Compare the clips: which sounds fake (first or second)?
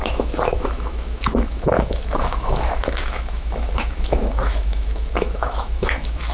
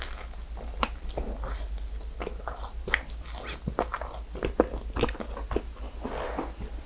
first